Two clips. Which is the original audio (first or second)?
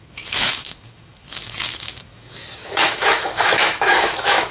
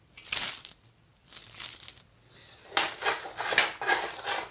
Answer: second